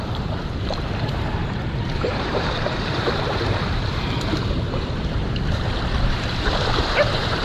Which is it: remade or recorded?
remade